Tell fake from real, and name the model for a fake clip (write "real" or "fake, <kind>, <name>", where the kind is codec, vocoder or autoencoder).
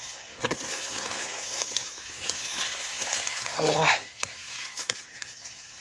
fake, codec, SNAC